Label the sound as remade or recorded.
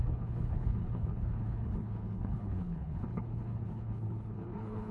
remade